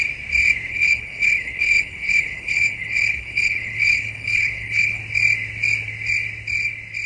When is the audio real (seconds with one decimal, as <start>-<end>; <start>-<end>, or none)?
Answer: 0.0-0.7; 5.0-7.1